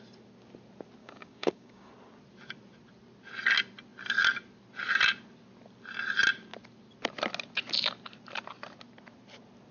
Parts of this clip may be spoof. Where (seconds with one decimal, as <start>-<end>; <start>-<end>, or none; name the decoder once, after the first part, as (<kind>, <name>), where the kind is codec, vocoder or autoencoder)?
1.0-1.9 (codec, DAC)